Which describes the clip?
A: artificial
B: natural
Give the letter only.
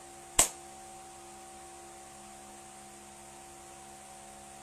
B